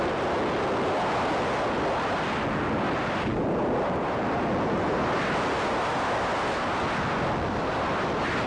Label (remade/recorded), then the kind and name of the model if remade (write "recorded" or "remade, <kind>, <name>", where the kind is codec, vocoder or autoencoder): recorded